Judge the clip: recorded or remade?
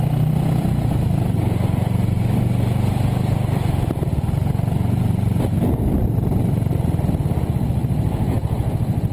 recorded